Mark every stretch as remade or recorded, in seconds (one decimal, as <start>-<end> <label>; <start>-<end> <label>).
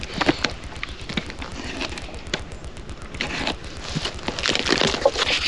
0.0-5.5 recorded